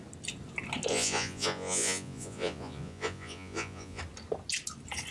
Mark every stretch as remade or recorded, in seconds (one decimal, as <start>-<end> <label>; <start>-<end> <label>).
0.0-0.9 recorded; 0.9-4.0 remade; 4.0-5.1 recorded